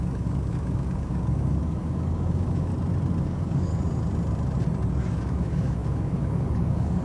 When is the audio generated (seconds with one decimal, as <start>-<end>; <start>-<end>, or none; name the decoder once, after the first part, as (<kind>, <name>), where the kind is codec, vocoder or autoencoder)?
0.0-2.7 (codec, DAC); 3.2-3.7; 4.9-7.0